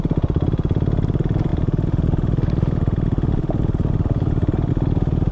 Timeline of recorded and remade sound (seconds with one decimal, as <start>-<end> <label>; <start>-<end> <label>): 0.0-1.5 recorded; 1.5-4.7 remade; 4.7-5.3 recorded